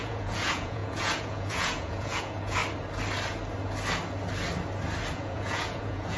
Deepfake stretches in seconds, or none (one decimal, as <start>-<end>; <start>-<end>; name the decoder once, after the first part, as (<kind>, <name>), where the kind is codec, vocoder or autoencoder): 0.0-2.6 (vocoder, Vocos); 5.1-6.2